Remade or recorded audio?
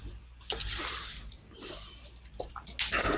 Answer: recorded